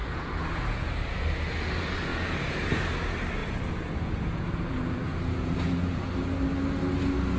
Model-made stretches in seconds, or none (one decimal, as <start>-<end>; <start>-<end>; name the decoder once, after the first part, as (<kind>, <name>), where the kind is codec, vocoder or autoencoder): 0.0-0.9 (vocoder, Vocos); 2.1-2.9; 3.4-6.1